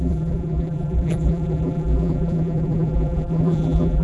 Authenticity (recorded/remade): remade